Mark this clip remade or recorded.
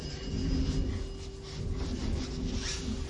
recorded